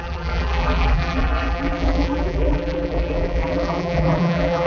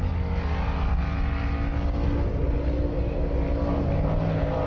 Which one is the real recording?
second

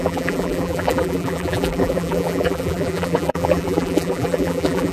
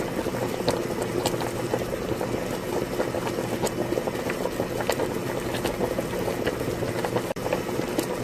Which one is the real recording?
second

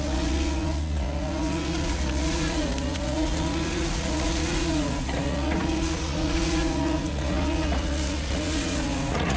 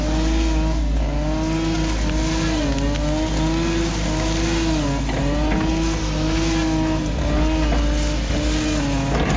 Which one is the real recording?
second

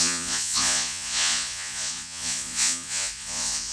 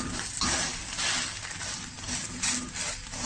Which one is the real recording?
second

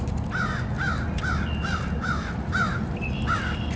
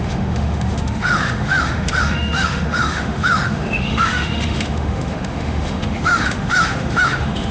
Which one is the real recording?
first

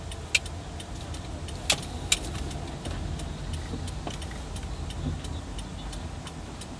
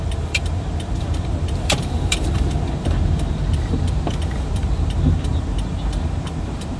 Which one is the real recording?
first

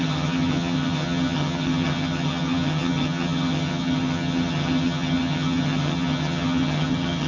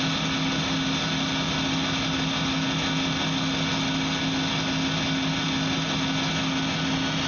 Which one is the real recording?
second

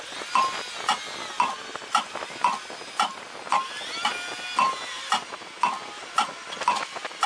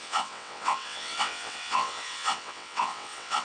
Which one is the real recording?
first